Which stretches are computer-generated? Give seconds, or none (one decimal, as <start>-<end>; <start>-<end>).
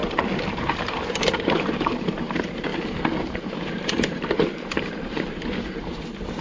0.0-6.4